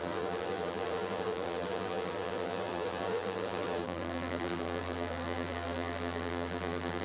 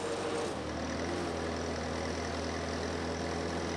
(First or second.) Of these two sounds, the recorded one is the second